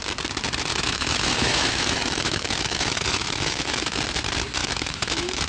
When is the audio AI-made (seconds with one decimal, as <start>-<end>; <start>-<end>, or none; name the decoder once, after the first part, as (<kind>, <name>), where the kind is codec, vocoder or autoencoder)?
0.7-4.0 (autoencoder, DAC-VAE); 4.6-5.5